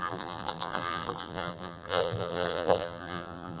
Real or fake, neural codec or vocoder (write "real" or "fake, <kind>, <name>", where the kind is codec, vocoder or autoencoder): fake, vocoder, BigVGAN v2